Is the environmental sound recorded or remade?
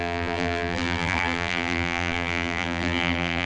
remade